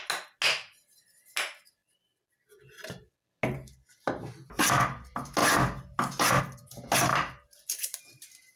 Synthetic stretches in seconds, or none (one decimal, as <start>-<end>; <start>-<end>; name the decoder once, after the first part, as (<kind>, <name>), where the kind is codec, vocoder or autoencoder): 7.1-8.0 (vocoder, BigVGAN v2)